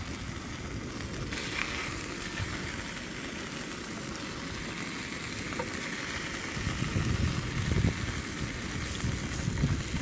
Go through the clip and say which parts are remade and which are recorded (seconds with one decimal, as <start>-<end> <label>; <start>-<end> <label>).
0.0-1.6 recorded; 1.6-2.5 remade; 2.5-10.0 recorded